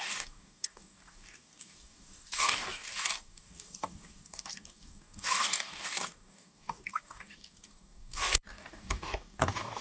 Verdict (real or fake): fake